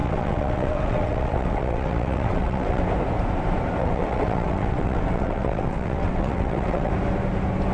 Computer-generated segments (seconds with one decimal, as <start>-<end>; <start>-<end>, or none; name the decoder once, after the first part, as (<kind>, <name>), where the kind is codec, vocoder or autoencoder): 0.0-2.8 (vocoder, WaveNeXt); 3.8-6.9